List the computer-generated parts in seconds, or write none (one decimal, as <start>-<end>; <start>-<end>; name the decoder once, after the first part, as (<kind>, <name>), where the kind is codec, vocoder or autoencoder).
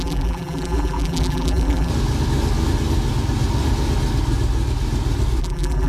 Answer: 0.0-1.9 (vocoder, BigVGAN v2); 5.4-5.9